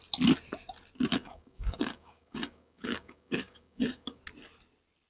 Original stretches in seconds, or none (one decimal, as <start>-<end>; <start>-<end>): 0.0-1.1; 4.2-5.1